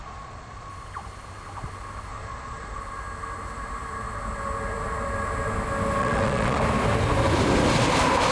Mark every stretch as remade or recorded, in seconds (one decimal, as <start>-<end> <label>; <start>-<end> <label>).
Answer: 0.0-0.7 remade; 0.7-2.1 recorded; 2.1-2.8 remade; 2.8-6.0 recorded; 6.0-6.6 remade; 6.6-8.3 recorded